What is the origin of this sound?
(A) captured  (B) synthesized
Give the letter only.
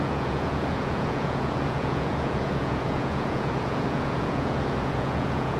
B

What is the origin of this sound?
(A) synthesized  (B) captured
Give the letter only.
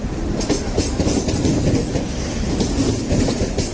B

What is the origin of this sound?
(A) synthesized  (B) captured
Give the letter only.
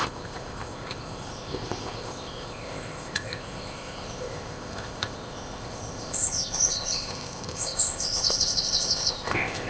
A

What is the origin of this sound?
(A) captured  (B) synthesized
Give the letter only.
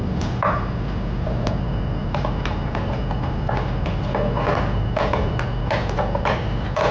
A